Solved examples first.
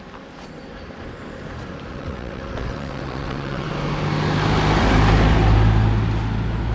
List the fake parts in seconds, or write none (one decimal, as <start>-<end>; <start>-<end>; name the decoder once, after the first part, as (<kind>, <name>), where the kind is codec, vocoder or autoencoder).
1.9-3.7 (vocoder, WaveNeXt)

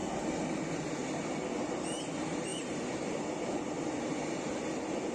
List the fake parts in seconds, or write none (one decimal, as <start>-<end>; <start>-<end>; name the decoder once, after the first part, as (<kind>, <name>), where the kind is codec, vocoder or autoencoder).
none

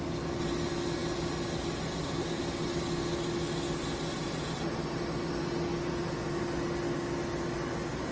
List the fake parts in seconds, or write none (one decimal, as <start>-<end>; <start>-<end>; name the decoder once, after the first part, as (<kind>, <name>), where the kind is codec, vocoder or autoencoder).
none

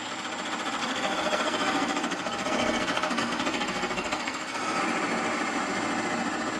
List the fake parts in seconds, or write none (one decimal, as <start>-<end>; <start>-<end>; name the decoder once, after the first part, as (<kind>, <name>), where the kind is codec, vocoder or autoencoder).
0.8-4.8 (codec, SNAC)

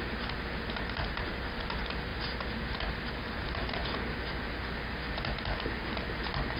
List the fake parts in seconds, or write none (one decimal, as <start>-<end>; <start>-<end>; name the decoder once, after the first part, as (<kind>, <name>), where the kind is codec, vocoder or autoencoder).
none